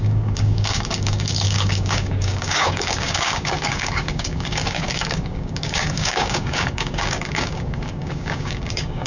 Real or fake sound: fake